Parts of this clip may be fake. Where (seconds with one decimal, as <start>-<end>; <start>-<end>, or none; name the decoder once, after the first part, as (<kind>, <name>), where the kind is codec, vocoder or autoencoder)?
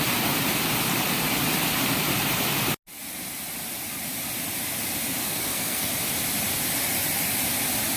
5.2-5.9 (codec, SNAC)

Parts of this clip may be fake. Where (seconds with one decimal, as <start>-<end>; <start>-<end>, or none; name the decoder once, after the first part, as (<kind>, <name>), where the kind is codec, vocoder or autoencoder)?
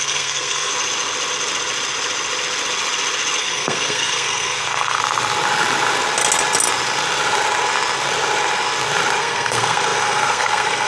0.0-0.7 (codec, SNAC); 3.4-5.0; 9.2-10.9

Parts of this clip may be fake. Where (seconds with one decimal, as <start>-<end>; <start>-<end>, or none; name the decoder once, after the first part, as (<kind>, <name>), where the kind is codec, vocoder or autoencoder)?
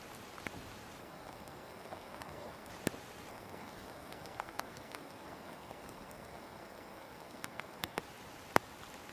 1.0-2.7 (codec, SNAC); 3.3-8.0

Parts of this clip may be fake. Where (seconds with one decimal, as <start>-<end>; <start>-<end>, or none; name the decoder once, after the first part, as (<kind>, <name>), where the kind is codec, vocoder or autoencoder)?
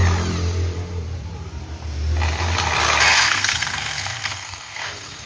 3.1-5.3 (codec, SNAC)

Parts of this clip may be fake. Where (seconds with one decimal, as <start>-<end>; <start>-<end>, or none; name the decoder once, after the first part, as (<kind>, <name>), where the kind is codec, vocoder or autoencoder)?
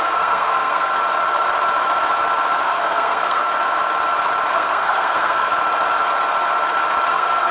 0.0-0.9 (codec, SNAC); 2.6-3.4; 4.5-5.5; 7.1-7.5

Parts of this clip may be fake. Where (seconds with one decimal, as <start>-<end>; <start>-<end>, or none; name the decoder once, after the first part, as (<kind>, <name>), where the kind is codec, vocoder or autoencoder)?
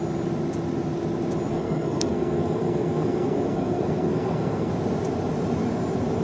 1.5-4.7 (codec, SNAC)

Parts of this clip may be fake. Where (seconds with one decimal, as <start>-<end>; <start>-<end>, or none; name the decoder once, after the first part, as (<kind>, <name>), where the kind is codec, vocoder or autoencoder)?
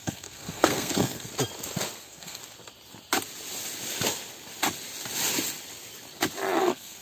0.0-1.3 (codec, SNAC); 2.0-2.4; 6.6-7.0